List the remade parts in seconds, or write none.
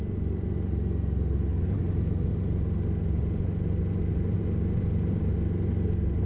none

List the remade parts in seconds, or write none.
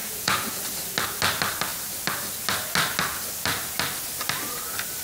0.0-0.6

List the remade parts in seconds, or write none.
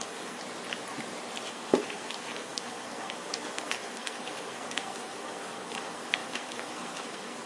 0.0-0.4; 1.5-7.5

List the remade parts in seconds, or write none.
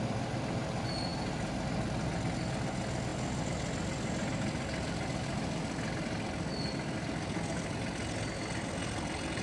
none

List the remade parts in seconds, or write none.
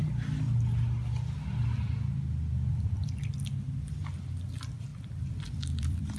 4.9-6.2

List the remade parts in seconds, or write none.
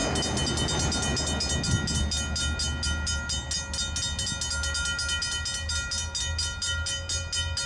none